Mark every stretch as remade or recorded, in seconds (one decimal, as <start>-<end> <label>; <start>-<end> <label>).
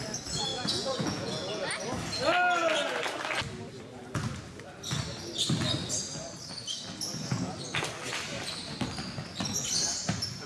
0.0-0.5 recorded; 0.5-1.7 remade; 1.7-10.5 recorded